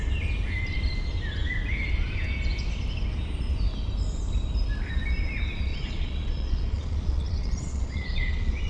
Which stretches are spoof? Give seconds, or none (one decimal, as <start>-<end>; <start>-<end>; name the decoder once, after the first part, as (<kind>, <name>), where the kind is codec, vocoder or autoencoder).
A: 5.7-8.7 (vocoder, Vocos)